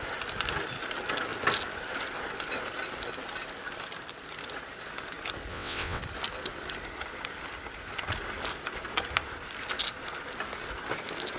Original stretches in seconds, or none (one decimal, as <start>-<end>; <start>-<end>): 0.0-5.5; 6.0-11.4